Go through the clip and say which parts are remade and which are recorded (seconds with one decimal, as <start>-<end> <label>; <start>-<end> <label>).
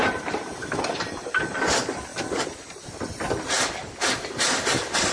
0.0-1.4 remade; 1.4-2.1 recorded; 2.1-2.9 remade; 2.9-5.1 recorded